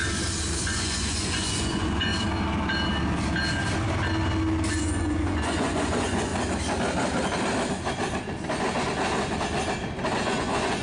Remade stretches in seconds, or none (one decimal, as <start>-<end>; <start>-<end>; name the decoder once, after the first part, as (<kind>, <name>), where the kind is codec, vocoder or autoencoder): 0.6-2.1 (vocoder, Vocos); 4.7-6.3; 10.1-10.8